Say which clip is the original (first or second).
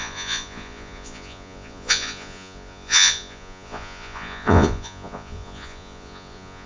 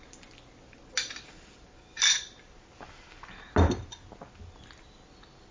second